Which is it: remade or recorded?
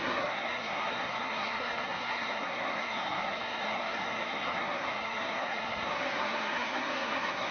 remade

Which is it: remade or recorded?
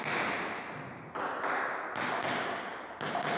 recorded